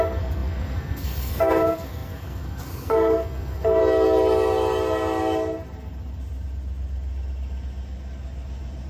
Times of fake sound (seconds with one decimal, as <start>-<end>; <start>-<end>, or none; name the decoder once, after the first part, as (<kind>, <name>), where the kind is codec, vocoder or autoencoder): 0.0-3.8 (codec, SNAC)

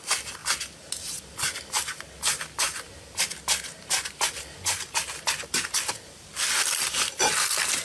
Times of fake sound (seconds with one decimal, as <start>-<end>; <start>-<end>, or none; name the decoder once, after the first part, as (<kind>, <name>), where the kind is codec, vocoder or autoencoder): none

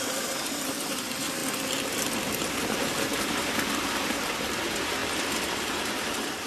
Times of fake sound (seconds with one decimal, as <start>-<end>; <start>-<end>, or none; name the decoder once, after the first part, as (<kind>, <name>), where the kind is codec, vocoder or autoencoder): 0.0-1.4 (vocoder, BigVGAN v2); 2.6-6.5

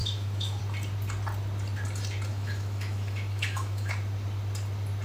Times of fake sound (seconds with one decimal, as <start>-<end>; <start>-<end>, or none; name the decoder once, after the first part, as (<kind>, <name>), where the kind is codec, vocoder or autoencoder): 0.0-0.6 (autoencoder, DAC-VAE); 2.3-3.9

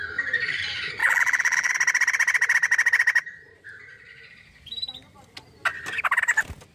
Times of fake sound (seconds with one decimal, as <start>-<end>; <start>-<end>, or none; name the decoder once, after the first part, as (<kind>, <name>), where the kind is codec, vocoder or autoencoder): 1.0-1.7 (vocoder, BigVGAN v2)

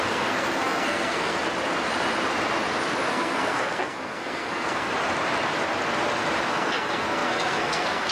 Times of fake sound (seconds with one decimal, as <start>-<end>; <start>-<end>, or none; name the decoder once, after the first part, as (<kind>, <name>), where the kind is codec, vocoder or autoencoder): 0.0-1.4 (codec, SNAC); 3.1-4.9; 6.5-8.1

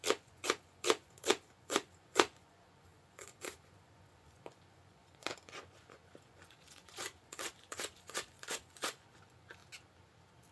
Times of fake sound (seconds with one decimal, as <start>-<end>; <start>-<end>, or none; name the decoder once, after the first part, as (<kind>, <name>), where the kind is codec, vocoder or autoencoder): 0.0-9.6 (vocoder, Vocos)